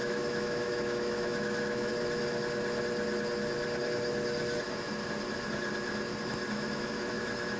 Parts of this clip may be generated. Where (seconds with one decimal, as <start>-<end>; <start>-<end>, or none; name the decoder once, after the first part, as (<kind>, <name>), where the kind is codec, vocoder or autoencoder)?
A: 0.0-1.9 (autoencoder, DAC-VAE); 6.5-7.6